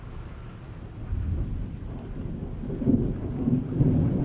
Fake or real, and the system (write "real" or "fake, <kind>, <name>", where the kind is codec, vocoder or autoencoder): real